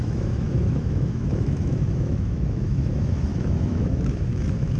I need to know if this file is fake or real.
fake